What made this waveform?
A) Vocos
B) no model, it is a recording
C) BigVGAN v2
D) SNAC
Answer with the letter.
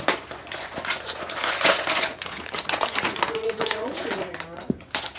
A